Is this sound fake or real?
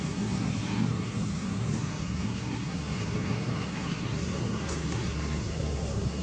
fake